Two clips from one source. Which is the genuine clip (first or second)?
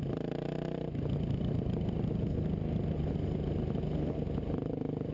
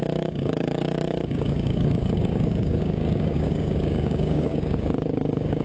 first